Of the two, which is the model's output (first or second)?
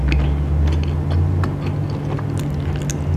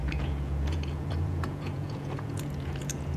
second